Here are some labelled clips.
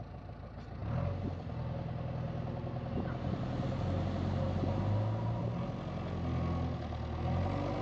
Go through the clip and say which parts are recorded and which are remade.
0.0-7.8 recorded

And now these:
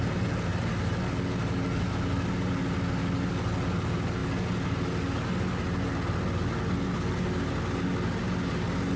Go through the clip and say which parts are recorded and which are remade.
0.0-9.0 recorded

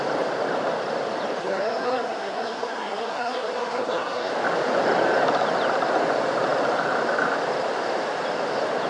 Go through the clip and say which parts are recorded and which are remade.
0.0-1.4 recorded; 1.4-4.3 remade; 4.3-8.9 recorded

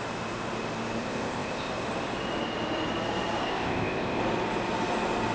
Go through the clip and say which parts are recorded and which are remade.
0.0-1.0 recorded; 1.0-1.7 remade; 1.7-3.4 recorded; 3.4-4.2 remade; 4.2-5.3 recorded

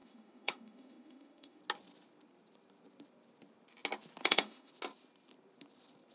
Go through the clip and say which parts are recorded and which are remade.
0.0-1.6 remade; 1.6-4.2 recorded; 4.2-4.7 remade; 4.7-6.1 recorded